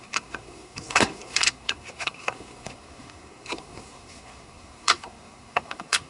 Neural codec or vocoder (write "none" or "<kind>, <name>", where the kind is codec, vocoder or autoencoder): codec, SNAC